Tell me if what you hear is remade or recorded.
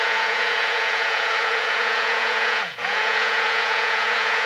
remade